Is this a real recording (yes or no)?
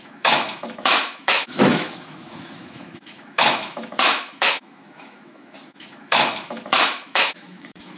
no